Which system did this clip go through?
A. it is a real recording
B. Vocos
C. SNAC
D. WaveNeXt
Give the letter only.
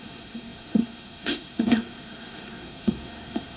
C